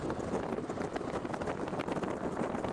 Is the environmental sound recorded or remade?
recorded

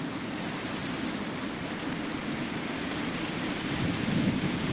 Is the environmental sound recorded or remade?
recorded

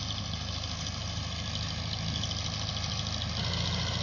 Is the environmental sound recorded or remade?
recorded